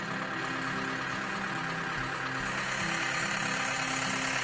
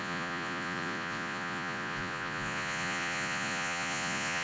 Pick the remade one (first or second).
second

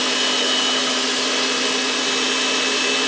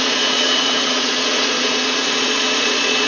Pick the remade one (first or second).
second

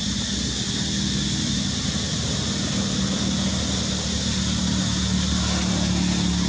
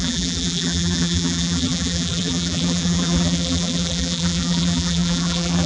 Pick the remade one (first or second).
second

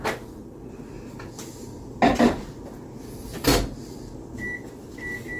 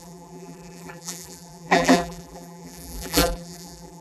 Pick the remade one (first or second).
second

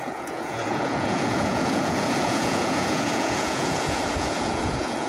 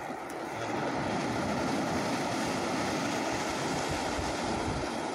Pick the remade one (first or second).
first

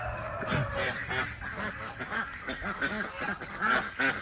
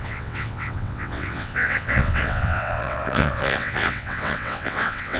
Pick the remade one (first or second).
second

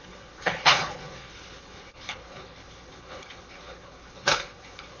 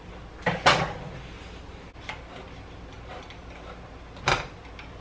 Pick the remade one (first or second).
first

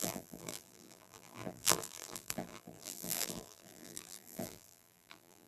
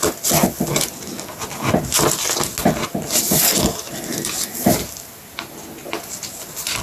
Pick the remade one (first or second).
first